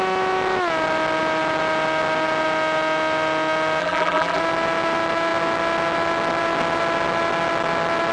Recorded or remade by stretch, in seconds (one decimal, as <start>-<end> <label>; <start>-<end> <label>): 0.0-3.8 recorded; 3.8-4.4 remade; 4.4-8.1 recorded